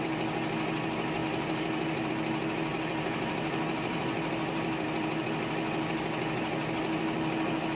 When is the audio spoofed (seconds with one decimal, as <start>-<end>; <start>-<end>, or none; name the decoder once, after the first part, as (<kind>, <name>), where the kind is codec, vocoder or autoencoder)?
1.2-2.1 (vocoder, BigVGAN v2); 2.7-5.2